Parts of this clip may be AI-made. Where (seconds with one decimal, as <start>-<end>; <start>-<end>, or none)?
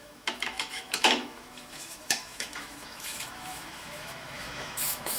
0.0-5.2